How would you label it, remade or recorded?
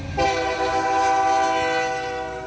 recorded